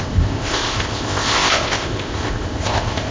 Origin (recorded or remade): remade